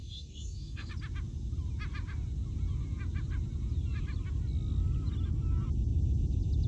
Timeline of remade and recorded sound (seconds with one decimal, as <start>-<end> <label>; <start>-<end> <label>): 0.0-0.9 remade; 0.9-6.7 recorded